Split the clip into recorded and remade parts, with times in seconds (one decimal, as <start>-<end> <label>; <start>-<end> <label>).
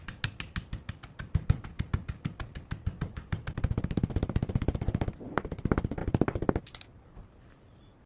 0.0-8.1 recorded